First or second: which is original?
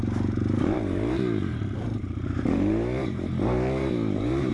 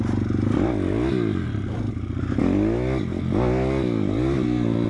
second